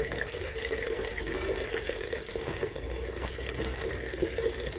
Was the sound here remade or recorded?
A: remade